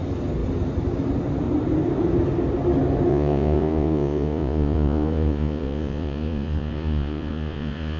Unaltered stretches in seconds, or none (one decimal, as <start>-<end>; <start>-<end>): 0.0-3.1